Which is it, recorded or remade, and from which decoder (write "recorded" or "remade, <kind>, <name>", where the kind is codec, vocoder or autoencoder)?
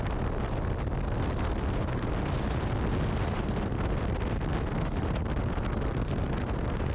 recorded